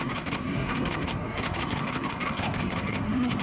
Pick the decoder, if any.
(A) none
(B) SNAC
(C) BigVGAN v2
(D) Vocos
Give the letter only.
B